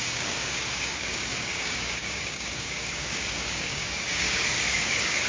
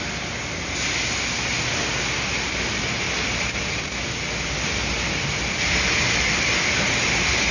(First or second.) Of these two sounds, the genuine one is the second